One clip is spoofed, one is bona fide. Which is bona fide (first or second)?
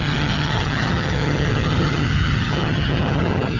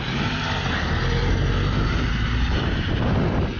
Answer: second